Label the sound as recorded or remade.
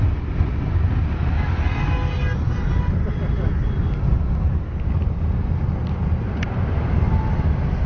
recorded